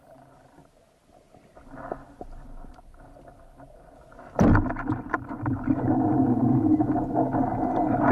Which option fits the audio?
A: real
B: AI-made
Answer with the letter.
A